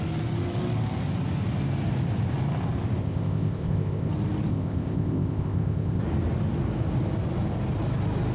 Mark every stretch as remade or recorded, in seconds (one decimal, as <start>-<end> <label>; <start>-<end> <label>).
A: 0.0-3.0 recorded; 3.0-4.1 remade; 4.1-4.5 recorded; 4.5-6.0 remade; 6.0-8.3 recorded